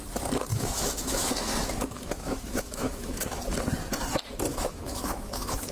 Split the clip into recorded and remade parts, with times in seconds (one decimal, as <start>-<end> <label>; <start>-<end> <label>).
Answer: 0.0-0.5 recorded; 0.5-3.4 remade; 3.4-4.5 recorded; 4.5-5.7 remade